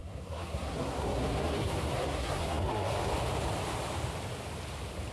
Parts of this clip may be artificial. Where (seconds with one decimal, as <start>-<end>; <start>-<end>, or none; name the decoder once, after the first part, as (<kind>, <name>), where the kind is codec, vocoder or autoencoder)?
0.0-3.1 (codec, SNAC)